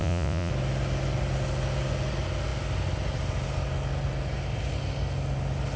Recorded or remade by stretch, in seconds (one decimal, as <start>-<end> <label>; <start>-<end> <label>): 0.0-0.5 remade; 0.5-5.8 recorded